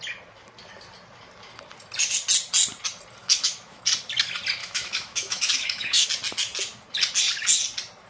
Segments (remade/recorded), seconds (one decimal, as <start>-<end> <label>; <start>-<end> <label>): 0.0-3.2 recorded; 3.2-3.8 remade; 3.8-4.6 recorded; 4.6-6.1 remade; 6.1-8.1 recorded